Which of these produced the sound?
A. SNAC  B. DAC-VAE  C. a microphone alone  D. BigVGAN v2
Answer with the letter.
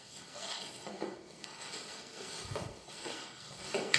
A